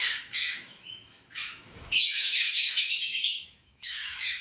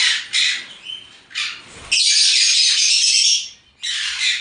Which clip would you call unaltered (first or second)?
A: second